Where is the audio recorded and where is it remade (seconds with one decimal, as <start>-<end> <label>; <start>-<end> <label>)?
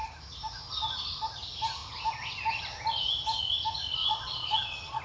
0.0-4.0 recorded; 4.0-5.0 remade